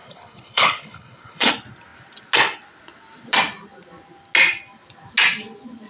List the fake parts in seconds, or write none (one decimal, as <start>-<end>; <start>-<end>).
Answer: 0.0-1.5